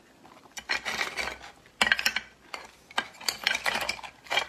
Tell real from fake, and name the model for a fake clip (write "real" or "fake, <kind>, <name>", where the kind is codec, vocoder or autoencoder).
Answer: real